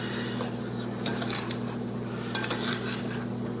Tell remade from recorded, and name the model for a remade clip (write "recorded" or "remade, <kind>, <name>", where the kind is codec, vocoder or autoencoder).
recorded